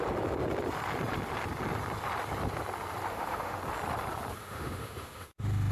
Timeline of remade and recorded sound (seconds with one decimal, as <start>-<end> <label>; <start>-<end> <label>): 0.0-3.1 recorded; 3.1-3.6 remade; 3.6-4.4 recorded; 4.4-5.7 remade